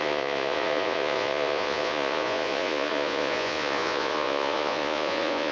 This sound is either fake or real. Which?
fake